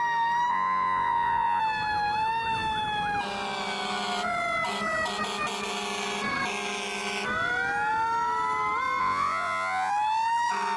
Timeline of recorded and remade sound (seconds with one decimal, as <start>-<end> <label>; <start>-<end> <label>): 0.0-0.5 recorded; 0.5-1.6 remade; 1.6-9.0 recorded; 9.0-9.9 remade; 9.9-10.8 recorded